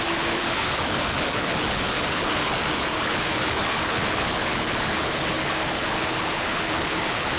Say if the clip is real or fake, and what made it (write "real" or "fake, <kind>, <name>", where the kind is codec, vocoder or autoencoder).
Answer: fake, codec, HILCodec